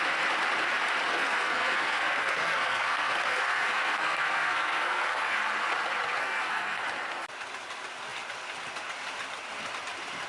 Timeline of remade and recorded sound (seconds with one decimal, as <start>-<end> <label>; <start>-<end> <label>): 0.0-1.1 recorded; 1.1-5.4 remade; 5.4-6.2 recorded; 6.2-6.8 remade; 6.8-10.3 recorded

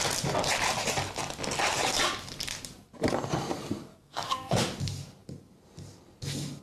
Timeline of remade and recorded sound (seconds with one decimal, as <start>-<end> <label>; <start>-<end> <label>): 0.0-3.9 recorded; 3.9-4.6 remade; 4.6-6.6 recorded

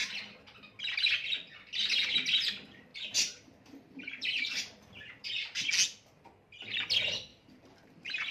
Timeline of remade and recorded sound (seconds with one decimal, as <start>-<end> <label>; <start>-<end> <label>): 0.0-2.9 recorded; 2.9-5.7 remade; 5.7-7.3 recorded; 7.3-8.3 remade

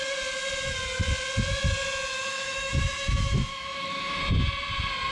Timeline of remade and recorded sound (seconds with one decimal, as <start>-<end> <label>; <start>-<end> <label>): 0.0-2.1 recorded; 2.1-4.2 remade; 4.2-5.1 recorded

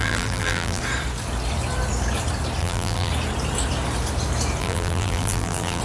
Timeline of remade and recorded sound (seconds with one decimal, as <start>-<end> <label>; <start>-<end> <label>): 0.0-0.8 remade; 0.8-2.6 recorded; 2.6-3.1 remade; 3.1-4.6 recorded; 4.6-5.8 remade

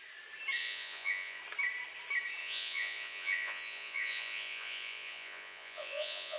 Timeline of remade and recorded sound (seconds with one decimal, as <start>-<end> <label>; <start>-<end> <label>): 0.0-0.6 recorded; 0.6-1.4 remade; 1.4-2.4 recorded; 2.4-6.4 remade

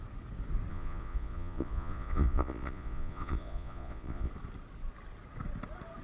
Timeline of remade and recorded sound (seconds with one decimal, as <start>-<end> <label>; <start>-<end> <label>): 0.0-0.7 recorded; 0.7-4.3 remade; 4.3-6.0 recorded

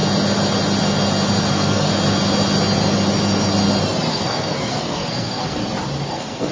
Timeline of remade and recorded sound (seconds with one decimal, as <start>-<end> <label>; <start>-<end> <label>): 0.0-1.5 recorded; 1.5-1.9 remade; 1.9-4.1 recorded; 4.1-5.6 remade; 5.6-6.1 recorded; 6.1-6.5 remade